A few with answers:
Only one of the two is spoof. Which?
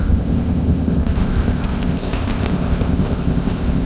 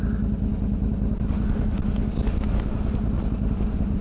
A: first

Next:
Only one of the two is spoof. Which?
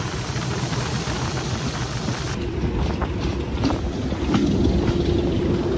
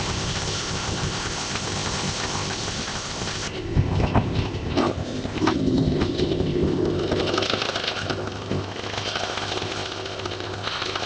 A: second